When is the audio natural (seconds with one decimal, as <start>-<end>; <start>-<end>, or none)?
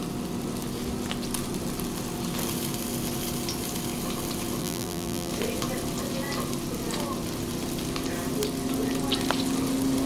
0.0-4.6; 5.3-10.1